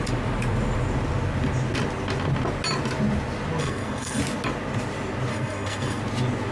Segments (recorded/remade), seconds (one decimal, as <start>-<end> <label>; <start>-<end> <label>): 0.0-3.6 recorded; 3.6-4.2 remade; 4.2-5.3 recorded; 5.3-6.0 remade; 6.0-6.5 recorded